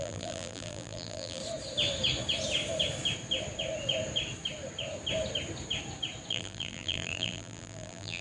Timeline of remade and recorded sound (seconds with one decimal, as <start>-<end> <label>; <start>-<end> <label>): 0.0-1.4 remade; 1.4-6.3 recorded; 6.3-8.2 remade